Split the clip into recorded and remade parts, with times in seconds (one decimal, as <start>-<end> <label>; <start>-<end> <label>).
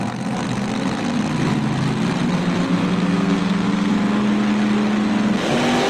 0.0-2.8 recorded; 2.8-3.9 remade; 3.9-5.9 recorded